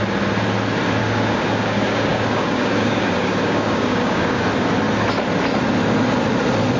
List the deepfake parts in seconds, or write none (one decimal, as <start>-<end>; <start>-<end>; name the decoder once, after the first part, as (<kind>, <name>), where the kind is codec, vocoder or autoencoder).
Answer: 1.0-4.4 (codec, DAC)

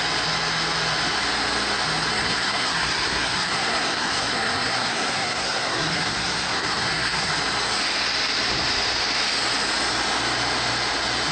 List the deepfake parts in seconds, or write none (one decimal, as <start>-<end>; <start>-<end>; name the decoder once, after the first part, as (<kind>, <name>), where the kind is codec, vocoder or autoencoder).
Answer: 2.1-7.3 (codec, SNAC)